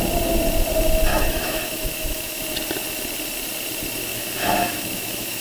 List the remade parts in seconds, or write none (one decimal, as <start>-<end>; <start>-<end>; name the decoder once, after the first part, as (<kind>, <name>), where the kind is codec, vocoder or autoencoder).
1.1-2.4 (autoencoder, DAC-VAE); 4.1-5.4